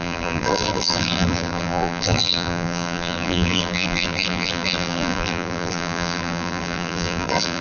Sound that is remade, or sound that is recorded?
remade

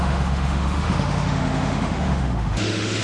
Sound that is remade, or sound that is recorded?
remade